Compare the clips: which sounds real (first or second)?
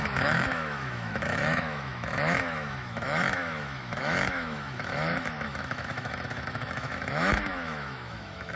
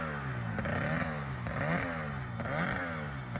second